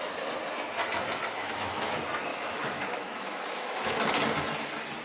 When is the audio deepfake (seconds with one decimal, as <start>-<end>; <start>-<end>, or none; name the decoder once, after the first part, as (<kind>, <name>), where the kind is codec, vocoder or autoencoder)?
1.4-1.9 (autoencoder, DAC-VAE); 2.3-4.1